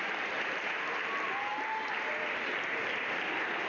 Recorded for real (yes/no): yes